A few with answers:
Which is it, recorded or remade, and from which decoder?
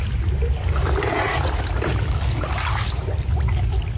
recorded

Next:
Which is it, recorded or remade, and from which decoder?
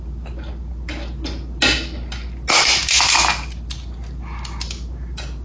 recorded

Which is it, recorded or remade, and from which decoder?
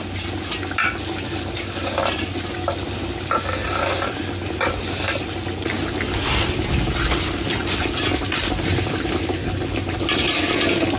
recorded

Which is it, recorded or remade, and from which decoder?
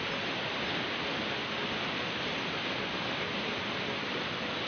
recorded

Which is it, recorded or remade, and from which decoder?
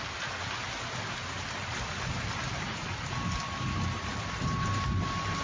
recorded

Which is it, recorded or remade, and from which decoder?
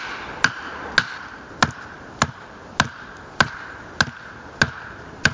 recorded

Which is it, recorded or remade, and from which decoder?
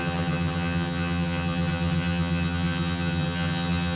remade, vocoder, HiFi-GAN